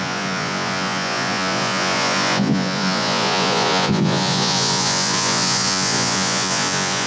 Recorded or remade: remade